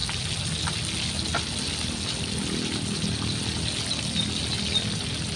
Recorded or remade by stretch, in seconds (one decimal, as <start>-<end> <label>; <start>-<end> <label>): 0.0-5.4 recorded